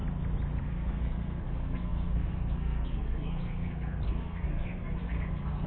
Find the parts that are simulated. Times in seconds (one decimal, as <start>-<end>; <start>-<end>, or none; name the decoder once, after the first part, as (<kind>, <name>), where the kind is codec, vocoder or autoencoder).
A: 0.6-5.7 (codec, SNAC)